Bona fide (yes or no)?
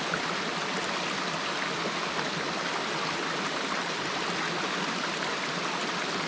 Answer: yes